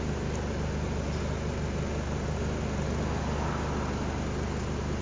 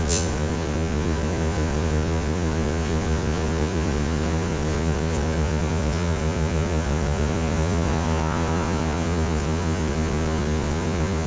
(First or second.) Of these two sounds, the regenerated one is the second